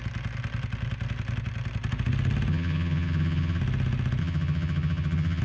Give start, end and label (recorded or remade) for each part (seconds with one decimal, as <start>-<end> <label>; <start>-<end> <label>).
0.0-2.5 recorded; 2.5-3.6 remade; 3.6-4.2 recorded; 4.2-5.4 remade